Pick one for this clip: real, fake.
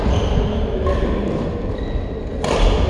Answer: real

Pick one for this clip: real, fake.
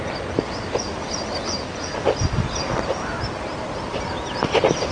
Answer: real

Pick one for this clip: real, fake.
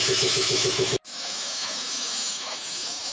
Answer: fake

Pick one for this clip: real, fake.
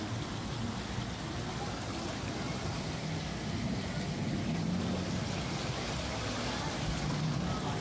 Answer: real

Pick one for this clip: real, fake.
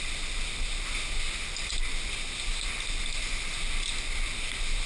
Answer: real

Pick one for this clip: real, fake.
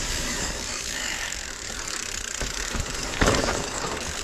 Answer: fake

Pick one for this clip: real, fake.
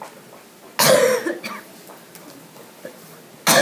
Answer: real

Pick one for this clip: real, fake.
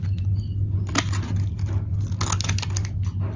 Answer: real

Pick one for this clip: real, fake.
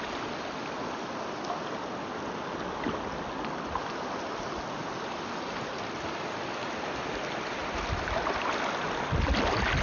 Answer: real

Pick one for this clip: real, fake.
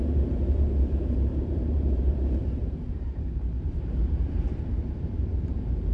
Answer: fake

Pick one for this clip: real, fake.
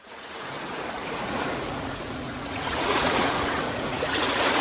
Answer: fake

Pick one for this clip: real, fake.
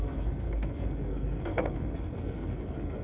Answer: fake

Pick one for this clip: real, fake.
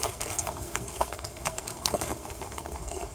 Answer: fake